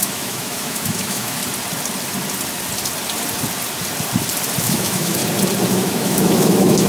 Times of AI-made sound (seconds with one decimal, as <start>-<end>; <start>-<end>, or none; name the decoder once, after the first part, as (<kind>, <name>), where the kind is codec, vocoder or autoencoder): 0.0-1.4 (autoencoder, DAC-VAE); 4.6-5.2; 5.7-6.9